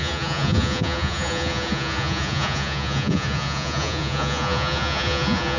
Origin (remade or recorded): remade